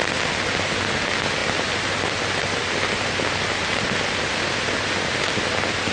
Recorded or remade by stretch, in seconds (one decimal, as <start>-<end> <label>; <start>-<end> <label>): 0.0-5.9 recorded